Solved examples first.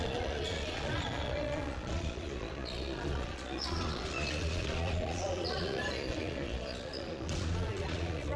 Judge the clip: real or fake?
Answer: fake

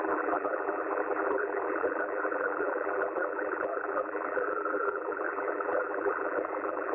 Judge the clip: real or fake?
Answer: fake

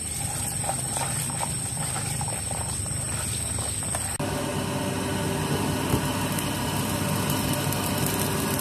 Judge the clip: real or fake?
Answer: real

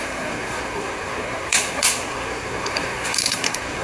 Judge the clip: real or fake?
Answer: fake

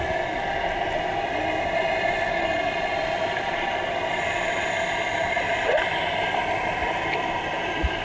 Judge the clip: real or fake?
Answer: real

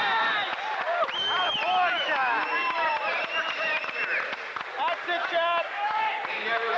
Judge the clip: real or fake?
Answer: real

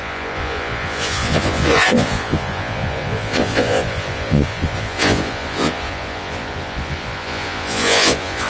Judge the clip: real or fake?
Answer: fake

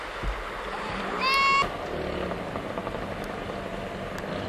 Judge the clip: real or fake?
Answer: real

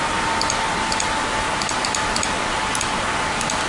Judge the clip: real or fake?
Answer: real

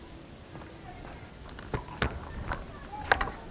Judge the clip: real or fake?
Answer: real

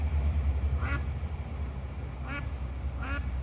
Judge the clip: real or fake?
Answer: real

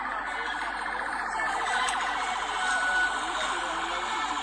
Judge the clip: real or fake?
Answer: real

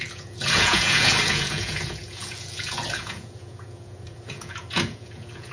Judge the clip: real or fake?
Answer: fake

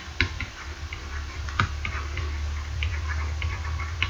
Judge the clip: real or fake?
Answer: fake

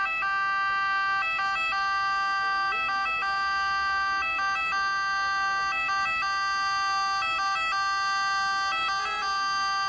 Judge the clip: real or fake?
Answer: real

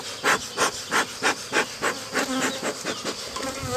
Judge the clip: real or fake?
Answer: real